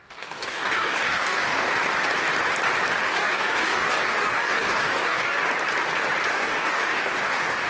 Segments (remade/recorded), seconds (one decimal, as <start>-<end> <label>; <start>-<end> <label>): 0.0-1.7 remade; 1.7-3.0 recorded; 3.0-5.4 remade; 5.4-6.3 recorded; 6.3-7.7 remade